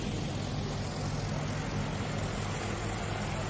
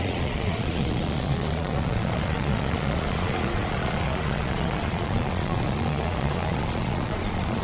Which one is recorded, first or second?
first